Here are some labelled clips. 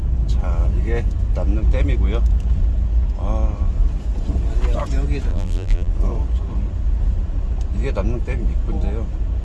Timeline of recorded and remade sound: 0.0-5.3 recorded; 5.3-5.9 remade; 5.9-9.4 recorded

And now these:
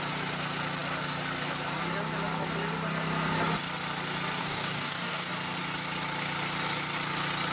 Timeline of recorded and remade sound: 0.0-4.4 recorded; 4.4-5.3 remade; 5.3-7.5 recorded

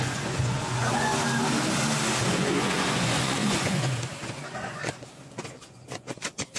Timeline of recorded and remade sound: 0.0-1.1 remade; 1.1-2.3 recorded; 2.3-6.6 remade

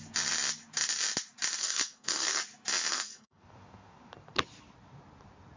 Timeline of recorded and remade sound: 0.0-1.6 recorded; 1.6-2.4 remade; 2.4-2.9 recorded; 2.9-3.4 remade; 3.4-5.6 recorded